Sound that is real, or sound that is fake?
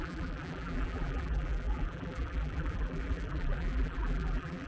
fake